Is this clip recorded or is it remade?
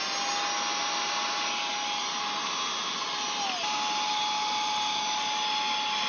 recorded